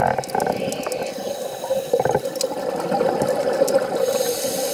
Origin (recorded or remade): recorded